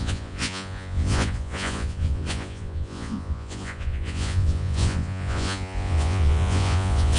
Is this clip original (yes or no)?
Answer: no